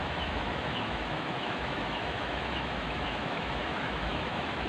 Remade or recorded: remade